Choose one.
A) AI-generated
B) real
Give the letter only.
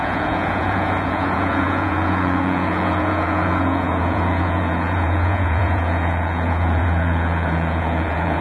A